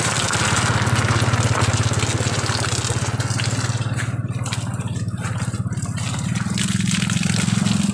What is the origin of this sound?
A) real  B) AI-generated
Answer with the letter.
A